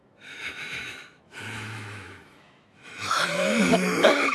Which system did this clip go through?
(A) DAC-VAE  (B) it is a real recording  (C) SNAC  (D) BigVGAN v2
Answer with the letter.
A